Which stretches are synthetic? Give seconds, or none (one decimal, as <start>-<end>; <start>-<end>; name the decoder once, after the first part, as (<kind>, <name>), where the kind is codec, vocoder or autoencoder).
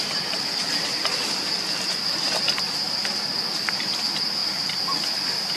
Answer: 4.4-4.9 (vocoder, BigVGAN v2)